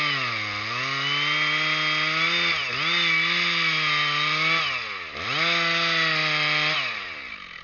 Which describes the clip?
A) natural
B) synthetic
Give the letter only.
A